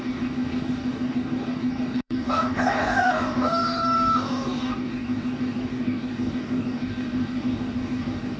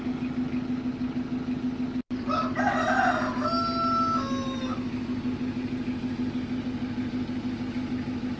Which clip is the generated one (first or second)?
first